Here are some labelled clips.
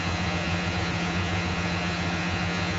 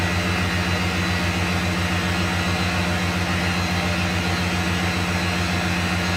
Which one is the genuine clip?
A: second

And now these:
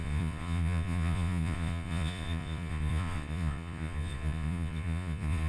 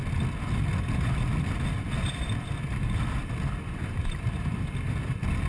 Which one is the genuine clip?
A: second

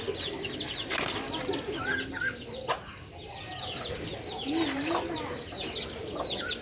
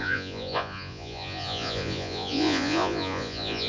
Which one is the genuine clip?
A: first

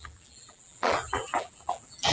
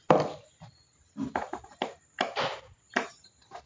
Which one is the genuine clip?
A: second